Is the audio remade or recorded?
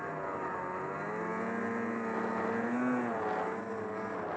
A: recorded